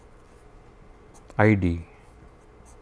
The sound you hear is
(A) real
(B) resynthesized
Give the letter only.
A